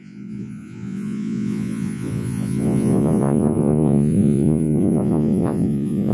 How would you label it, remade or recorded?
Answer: remade